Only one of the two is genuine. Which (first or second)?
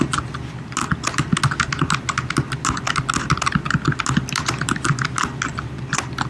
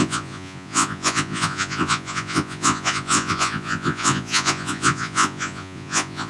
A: first